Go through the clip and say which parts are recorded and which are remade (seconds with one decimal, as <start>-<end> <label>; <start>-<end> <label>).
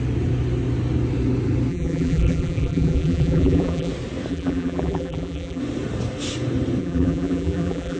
0.0-1.7 recorded; 1.7-3.9 remade; 3.9-4.3 recorded; 4.3-5.6 remade; 5.6-6.8 recorded; 6.8-8.0 remade